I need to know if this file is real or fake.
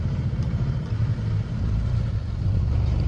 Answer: fake